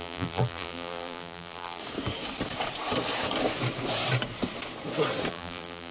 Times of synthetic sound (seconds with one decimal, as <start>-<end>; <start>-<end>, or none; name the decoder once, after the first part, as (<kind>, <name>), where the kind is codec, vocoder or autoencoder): 0.0-1.8 (vocoder, BigVGAN v2); 5.3-5.9